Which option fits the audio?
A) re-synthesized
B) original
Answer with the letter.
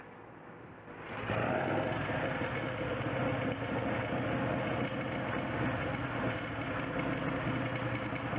B